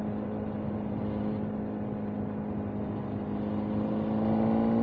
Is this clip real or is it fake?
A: real